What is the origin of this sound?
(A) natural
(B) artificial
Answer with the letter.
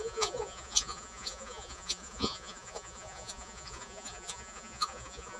B